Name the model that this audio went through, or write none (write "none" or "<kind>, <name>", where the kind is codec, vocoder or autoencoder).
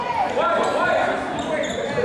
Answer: none